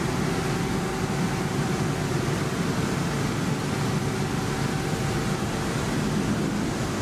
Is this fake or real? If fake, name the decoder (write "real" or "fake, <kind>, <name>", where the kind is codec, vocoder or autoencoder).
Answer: real